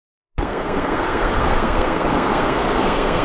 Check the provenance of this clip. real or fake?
fake